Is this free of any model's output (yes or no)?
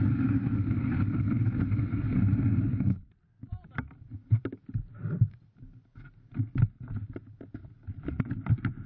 yes